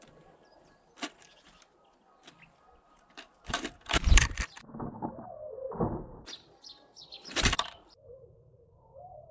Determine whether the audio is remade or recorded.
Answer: remade